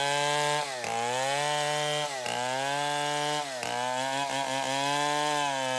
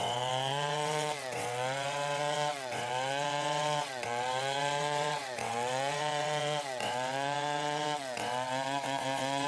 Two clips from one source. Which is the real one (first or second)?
first